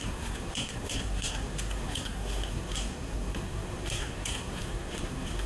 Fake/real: fake